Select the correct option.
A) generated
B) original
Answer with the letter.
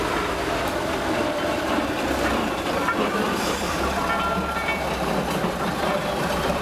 A